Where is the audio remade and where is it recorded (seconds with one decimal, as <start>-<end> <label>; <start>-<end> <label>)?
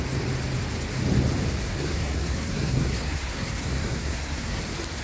0.0-1.6 recorded; 1.6-4.6 remade; 4.6-5.0 recorded